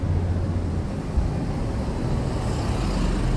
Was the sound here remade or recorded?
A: recorded